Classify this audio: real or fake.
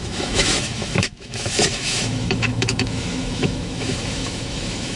fake